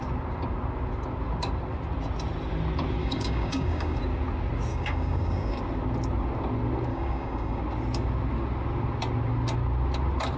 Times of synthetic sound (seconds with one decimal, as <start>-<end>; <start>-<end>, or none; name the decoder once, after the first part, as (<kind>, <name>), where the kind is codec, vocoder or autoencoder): 3.0-4.0 (codec, DAC); 4.7-5.6; 6.9-7.6